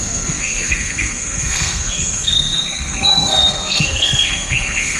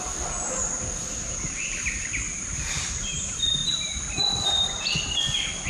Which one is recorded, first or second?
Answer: second